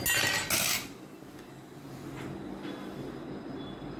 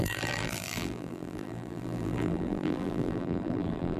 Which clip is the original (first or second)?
first